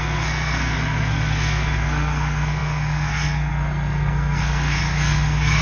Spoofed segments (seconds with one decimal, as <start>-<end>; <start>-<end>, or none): 0.0-5.6

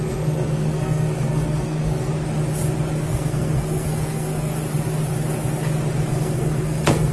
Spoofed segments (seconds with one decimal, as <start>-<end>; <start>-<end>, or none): 0.0-2.1; 3.0-4.5; 6.1-7.1

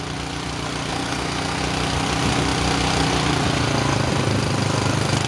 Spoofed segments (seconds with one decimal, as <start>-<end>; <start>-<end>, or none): 0.9-1.6

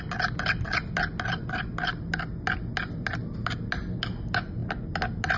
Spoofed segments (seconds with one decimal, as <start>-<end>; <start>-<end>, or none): none

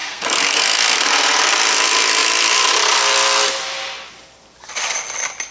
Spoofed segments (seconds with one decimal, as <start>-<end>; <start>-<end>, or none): 0.0-1.1